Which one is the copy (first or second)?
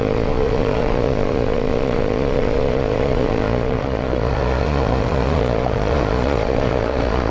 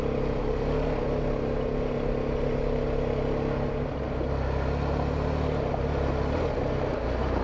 first